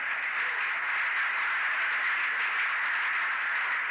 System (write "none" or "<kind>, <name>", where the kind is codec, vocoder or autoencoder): none